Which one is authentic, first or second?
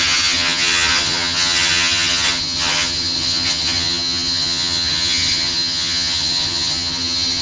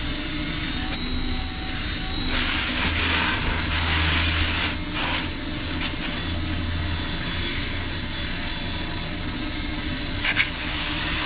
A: second